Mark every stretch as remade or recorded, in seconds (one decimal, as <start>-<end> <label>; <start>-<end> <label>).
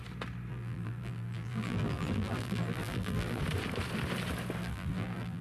0.0-0.5 recorded; 0.5-3.4 remade; 3.4-4.6 recorded; 4.6-5.4 remade